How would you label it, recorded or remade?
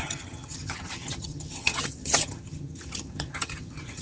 remade